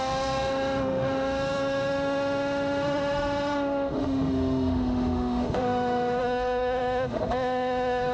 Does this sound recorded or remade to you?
remade